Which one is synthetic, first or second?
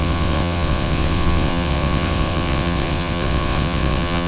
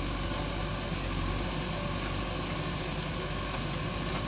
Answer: first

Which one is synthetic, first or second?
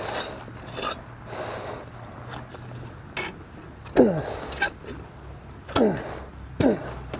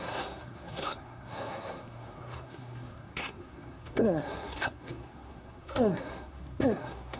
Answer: second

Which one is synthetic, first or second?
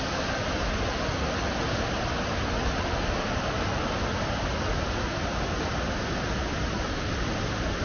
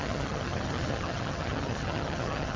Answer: second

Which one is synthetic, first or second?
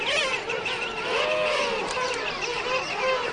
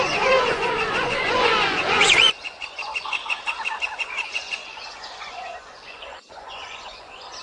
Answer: second